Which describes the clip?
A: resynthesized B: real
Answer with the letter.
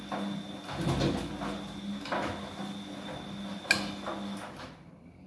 B